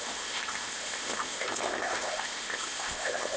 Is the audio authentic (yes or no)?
no